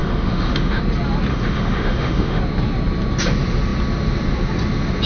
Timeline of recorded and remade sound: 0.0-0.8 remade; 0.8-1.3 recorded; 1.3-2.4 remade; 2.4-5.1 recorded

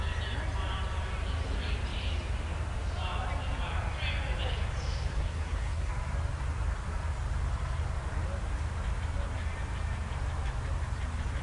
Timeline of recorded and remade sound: 0.0-5.1 recorded; 5.1-5.9 remade; 5.9-11.4 recorded